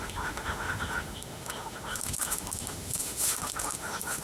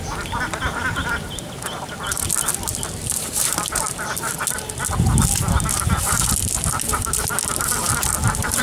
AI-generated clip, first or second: first